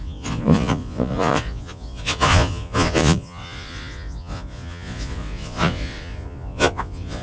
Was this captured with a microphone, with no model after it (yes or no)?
no